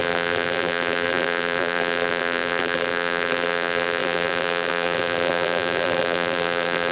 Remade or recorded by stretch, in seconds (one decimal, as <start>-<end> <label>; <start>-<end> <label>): 0.0-6.9 remade